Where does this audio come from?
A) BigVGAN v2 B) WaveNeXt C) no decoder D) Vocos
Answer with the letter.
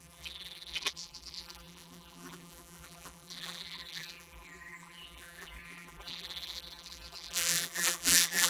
A